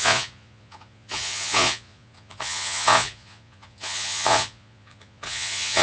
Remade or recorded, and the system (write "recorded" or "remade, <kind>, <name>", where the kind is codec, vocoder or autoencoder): remade, vocoder, Vocos